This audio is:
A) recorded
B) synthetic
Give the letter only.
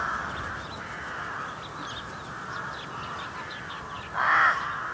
A